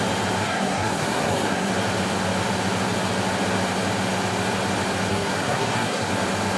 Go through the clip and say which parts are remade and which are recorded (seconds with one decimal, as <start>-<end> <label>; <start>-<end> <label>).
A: 0.0-0.4 recorded; 0.4-1.7 remade; 1.7-5.1 recorded; 5.1-6.1 remade; 6.1-6.6 recorded